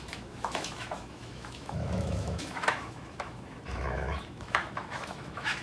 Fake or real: fake